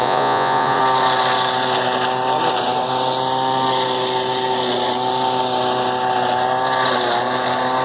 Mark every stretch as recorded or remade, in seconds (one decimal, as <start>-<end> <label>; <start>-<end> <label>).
0.0-0.8 remade; 0.8-7.8 recorded